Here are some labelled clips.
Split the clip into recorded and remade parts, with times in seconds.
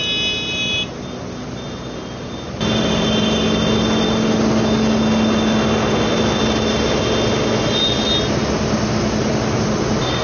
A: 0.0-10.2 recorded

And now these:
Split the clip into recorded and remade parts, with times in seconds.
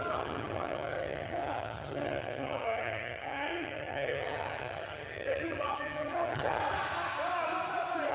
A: 0.0-6.6 remade; 6.6-8.1 recorded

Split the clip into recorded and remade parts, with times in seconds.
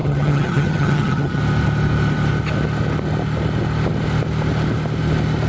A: 0.0-1.4 remade; 1.4-5.5 recorded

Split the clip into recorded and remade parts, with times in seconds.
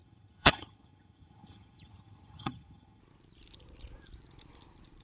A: 0.0-3.0 remade; 3.0-5.0 recorded